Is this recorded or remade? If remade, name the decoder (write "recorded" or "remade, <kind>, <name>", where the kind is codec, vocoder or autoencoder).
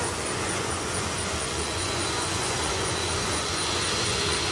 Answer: remade, vocoder, Vocos